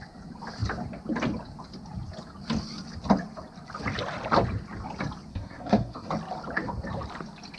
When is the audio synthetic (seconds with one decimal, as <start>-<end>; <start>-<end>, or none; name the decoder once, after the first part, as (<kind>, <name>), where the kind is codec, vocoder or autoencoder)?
5.3-6.1 (codec, SNAC)